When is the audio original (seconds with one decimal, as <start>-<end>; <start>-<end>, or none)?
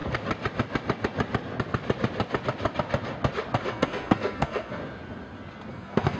0.0-3.7; 4.8-5.7